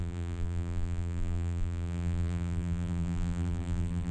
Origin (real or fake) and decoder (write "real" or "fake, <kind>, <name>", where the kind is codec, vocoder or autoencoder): fake, vocoder, BigVGAN v2